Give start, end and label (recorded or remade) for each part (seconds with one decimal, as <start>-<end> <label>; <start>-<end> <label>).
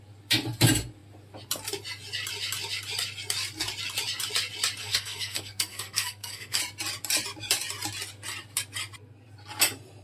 0.0-4.8 recorded; 4.8-6.6 remade; 6.6-10.0 recorded